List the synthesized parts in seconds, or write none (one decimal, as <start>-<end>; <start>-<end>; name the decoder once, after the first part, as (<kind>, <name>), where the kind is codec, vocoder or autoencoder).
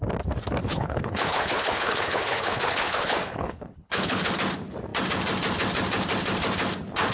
0.6-4.3 (codec, HILCodec)